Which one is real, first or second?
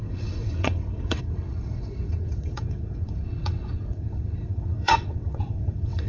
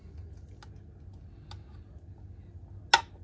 second